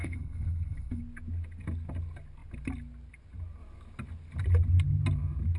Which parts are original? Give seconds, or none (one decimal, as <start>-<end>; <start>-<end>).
1.0-5.6